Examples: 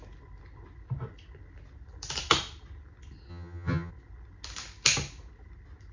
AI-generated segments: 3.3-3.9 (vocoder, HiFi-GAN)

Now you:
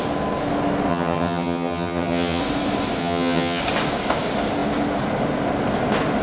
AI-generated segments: 0.9-2.4 (vocoder, HiFi-GAN); 3.0-3.6

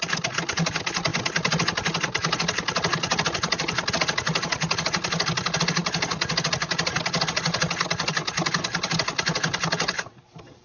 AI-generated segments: none

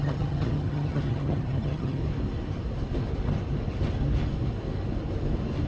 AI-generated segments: 0.0-2.0 (vocoder, HiFi-GAN)

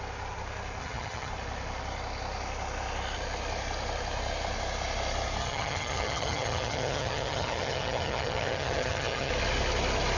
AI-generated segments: 0.8-1.3 (vocoder, HiFi-GAN); 5.4-9.3